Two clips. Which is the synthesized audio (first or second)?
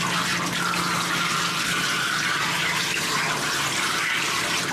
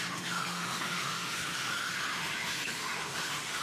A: second